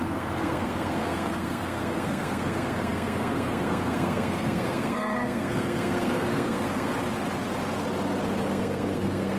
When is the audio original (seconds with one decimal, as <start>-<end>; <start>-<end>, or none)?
6.9-8.5